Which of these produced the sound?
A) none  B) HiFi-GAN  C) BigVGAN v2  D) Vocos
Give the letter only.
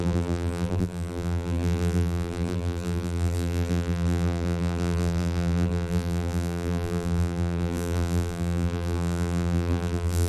C